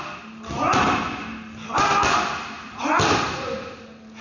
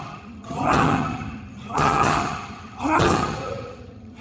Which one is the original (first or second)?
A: first